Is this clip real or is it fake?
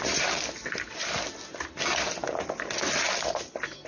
real